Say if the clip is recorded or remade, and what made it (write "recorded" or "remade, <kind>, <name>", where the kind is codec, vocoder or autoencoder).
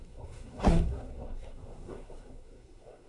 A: remade, codec, SNAC